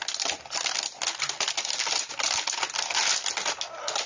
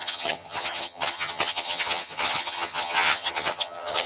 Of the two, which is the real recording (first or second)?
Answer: first